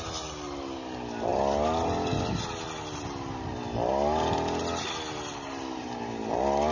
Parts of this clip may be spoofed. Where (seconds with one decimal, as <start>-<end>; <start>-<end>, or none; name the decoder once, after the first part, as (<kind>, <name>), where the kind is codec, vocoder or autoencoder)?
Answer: none